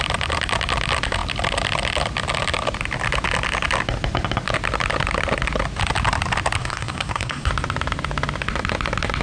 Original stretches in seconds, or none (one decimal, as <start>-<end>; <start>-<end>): 0.0-6.6; 7.5-9.2